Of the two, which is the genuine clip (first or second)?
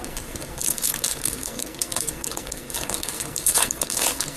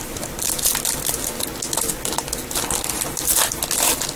second